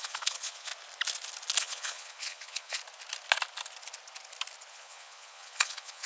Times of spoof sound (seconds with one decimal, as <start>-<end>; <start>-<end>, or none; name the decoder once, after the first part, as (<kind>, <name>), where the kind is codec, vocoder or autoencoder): 0.0-0.7 (vocoder, Vocos); 1.6-2.8; 4.7-6.1